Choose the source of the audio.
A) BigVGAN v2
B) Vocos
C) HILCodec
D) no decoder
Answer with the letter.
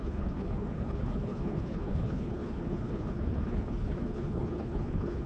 C